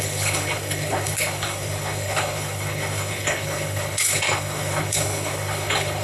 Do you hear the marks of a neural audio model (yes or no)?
yes